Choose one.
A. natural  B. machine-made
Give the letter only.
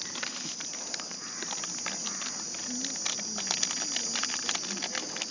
A